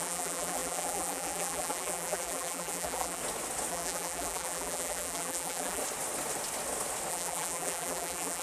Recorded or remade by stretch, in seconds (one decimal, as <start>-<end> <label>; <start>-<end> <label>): 0.0-3.2 remade; 3.2-3.7 recorded; 3.7-5.8 remade; 5.8-7.1 recorded; 7.1-8.4 remade